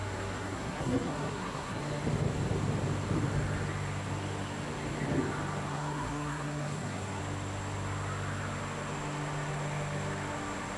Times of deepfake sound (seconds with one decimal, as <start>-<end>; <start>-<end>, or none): 0.0-1.8; 5.7-7.2